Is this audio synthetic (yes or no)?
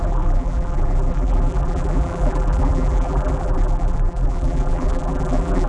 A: yes